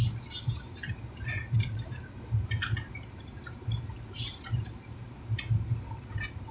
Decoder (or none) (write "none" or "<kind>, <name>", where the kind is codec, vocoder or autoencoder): vocoder, BigVGAN v2